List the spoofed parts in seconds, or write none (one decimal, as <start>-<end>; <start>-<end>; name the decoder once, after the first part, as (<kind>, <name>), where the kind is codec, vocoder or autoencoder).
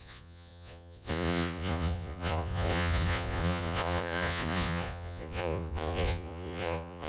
0.0-7.1 (vocoder, Vocos)